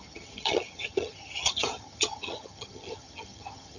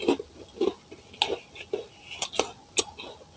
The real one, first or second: second